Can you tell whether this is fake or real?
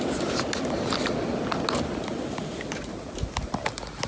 real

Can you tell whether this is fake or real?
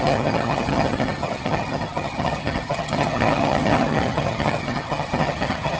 fake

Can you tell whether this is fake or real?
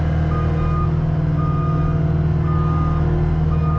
real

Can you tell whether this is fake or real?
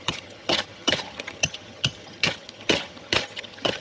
fake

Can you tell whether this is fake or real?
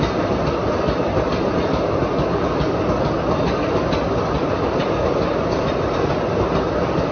real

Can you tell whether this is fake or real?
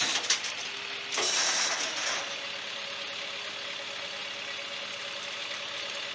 real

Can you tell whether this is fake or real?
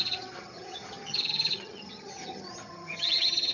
fake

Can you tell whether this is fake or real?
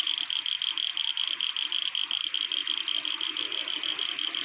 real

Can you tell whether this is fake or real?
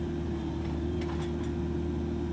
real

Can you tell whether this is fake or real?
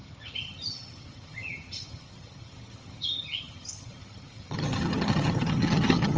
fake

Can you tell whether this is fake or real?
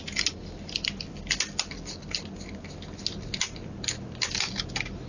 real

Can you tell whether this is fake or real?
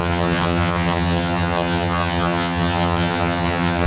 fake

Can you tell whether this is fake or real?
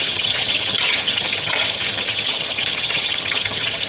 fake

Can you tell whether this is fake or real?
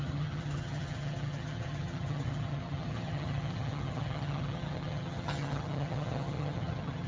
fake